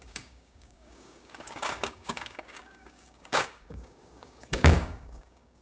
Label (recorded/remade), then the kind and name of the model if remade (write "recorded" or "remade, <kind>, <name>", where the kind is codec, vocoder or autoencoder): remade, codec, DAC